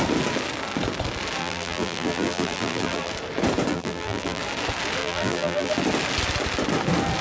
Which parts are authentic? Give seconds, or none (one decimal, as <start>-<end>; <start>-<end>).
0.0-1.4; 3.1-3.7; 4.4-5.0; 5.7-7.2